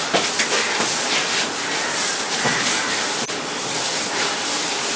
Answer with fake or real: real